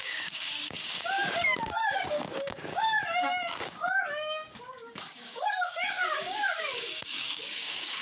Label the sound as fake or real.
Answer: fake